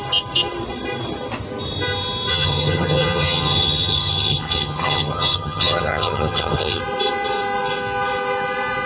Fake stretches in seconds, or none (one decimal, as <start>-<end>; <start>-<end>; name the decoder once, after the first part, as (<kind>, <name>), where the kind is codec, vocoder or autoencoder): 2.3-6.8 (vocoder, HiFi-GAN)